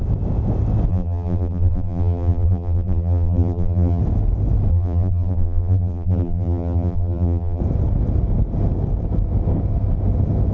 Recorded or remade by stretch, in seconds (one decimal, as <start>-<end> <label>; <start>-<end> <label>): 0.0-0.9 recorded; 0.9-4.0 remade; 4.0-4.7 recorded; 4.7-7.6 remade; 7.6-10.5 recorded